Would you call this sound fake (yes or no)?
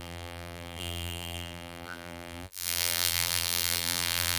yes